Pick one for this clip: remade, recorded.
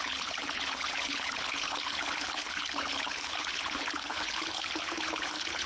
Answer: remade